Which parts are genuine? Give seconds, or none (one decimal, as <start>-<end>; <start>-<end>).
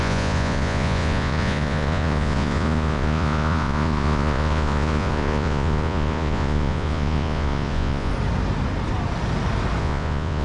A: 8.1-9.8